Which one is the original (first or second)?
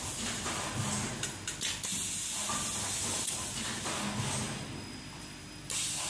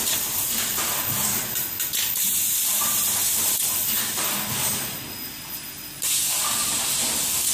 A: first